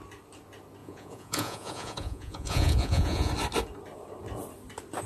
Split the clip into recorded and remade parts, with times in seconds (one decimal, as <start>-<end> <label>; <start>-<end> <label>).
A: 0.0-0.8 recorded; 0.8-3.3 remade; 3.3-5.1 recorded